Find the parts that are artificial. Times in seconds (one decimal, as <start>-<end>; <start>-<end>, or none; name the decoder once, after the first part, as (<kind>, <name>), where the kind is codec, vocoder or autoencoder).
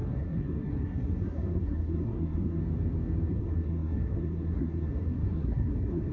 0.0-2.6 (codec, SNAC); 3.3-6.1